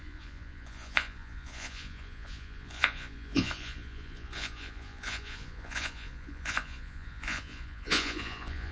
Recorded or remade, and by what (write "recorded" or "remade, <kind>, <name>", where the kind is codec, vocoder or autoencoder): remade, vocoder, Vocos